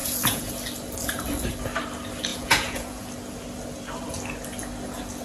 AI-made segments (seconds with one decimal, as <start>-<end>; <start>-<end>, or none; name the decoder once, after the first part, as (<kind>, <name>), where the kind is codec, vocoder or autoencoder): 0.0-0.5 (vocoder, Vocos); 2.3-3.0